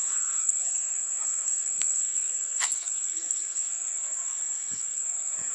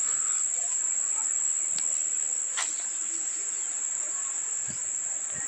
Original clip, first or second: second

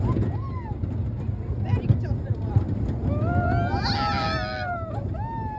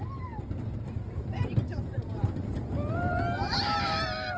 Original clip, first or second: first